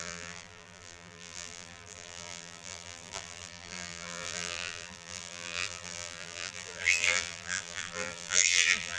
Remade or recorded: remade